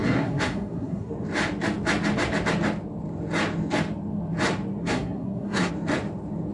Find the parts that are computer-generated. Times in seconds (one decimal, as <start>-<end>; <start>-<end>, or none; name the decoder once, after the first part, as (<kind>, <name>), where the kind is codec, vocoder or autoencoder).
0.0-1.1 (codec, SNAC); 4.8-5.7